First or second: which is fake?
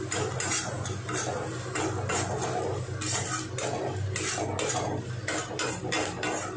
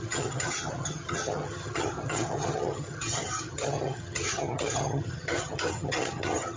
second